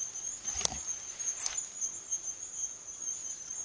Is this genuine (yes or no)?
yes